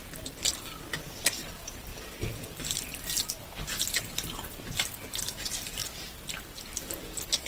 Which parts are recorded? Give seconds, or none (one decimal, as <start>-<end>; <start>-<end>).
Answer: 0.0-7.5